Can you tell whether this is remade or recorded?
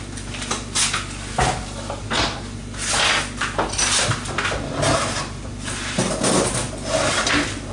recorded